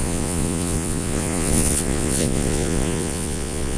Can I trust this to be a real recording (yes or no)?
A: no